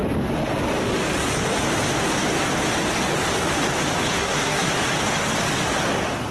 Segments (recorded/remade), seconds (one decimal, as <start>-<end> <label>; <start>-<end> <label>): 0.0-4.2 recorded; 4.2-4.7 remade; 4.7-6.3 recorded